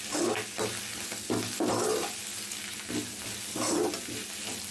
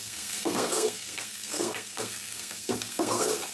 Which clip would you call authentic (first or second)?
first